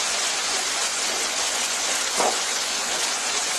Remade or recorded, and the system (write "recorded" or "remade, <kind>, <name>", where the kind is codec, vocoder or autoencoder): remade, vocoder, Vocos